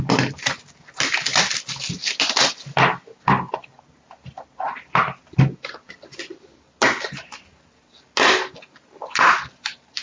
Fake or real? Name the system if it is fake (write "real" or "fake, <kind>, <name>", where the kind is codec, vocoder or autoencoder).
real